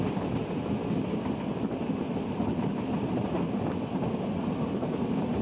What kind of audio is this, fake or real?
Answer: real